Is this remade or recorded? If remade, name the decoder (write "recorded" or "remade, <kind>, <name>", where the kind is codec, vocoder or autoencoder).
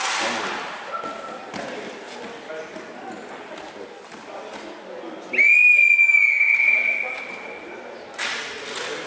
recorded